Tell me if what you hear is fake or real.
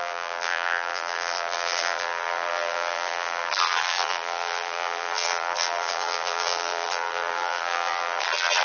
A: fake